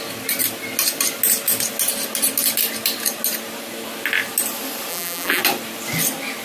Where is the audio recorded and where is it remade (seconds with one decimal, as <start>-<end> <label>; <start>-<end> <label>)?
0.0-4.9 recorded; 4.9-5.4 remade; 5.4-6.4 recorded

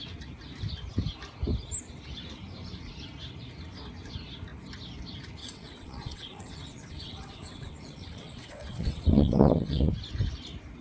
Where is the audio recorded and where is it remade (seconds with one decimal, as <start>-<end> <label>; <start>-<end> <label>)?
0.0-5.4 recorded; 5.4-9.9 remade; 9.9-10.8 recorded

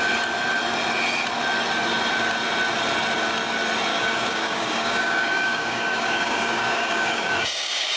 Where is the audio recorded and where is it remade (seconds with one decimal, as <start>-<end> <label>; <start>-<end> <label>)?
0.0-3.9 recorded; 3.9-8.0 remade

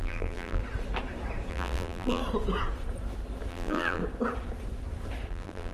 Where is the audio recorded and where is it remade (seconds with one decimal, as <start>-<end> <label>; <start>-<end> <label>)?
0.0-0.6 remade; 0.6-1.5 recorded; 1.5-2.2 remade; 2.2-3.5 recorded; 3.5-4.0 remade; 4.0-5.3 recorded; 5.3-5.7 remade